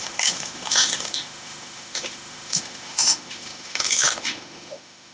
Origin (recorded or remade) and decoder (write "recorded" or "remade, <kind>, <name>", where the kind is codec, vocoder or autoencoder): remade, autoencoder, DAC-VAE